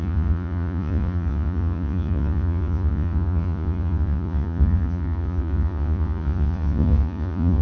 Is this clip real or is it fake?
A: fake